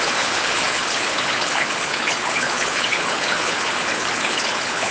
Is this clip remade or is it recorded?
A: remade